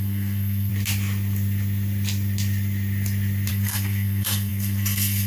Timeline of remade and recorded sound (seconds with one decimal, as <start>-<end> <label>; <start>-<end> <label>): 0.0-0.7 remade; 0.7-3.5 recorded; 3.5-5.3 remade